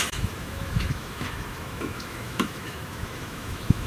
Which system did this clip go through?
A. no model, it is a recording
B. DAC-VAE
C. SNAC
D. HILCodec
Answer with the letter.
B